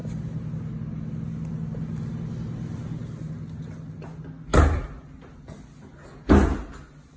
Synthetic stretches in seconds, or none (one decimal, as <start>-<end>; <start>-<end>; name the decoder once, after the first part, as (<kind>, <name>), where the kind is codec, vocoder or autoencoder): none